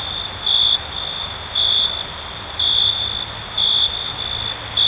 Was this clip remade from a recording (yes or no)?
no